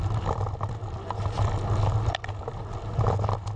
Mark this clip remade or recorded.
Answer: recorded